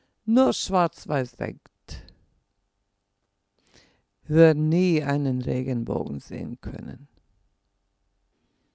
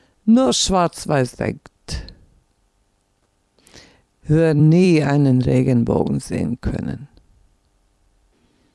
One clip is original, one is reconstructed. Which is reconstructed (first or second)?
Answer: second